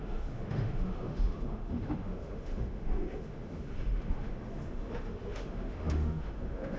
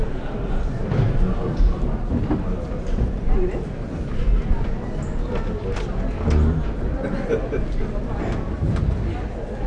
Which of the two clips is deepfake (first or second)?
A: first